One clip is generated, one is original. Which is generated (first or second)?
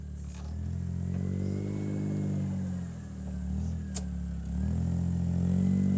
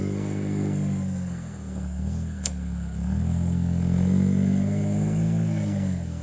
second